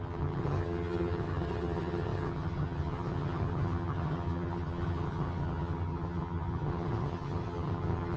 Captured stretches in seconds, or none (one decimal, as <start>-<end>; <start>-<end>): none